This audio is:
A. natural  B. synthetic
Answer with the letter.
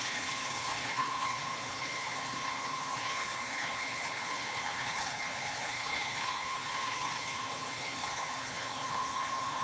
B